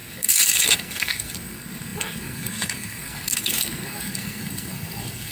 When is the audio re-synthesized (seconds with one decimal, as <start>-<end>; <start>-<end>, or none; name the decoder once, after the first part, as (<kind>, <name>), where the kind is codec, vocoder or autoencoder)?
0.0-5.3 (codec, SNAC)

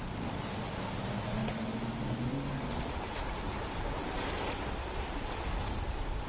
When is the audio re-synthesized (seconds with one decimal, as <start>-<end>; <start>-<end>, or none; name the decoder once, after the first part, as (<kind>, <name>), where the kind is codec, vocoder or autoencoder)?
none